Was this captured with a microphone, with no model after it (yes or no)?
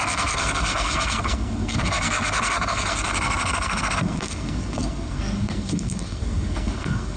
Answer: no